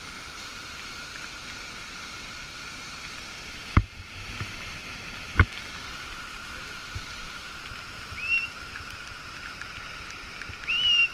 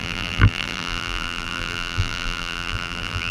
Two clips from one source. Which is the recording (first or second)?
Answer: first